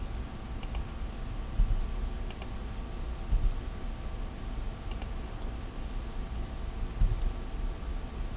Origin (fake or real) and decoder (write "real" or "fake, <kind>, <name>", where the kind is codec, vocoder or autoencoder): real